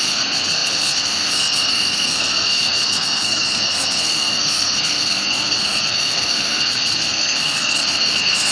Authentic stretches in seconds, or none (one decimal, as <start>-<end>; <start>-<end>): none